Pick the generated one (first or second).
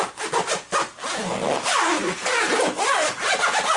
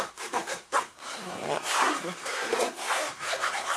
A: second